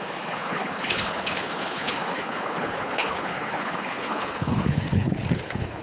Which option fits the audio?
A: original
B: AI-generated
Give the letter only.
B